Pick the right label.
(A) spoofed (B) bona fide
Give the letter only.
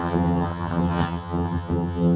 A